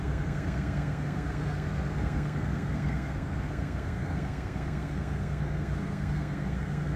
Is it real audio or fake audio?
fake